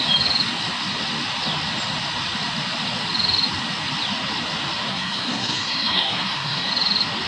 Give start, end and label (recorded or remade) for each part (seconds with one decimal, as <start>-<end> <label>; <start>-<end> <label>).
0.0-4.9 recorded; 4.9-6.7 remade; 6.7-7.3 recorded